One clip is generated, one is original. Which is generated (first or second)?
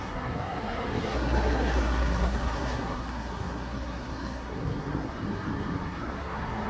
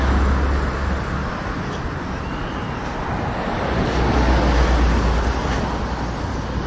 first